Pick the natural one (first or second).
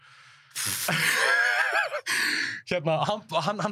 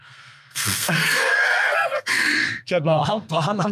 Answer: first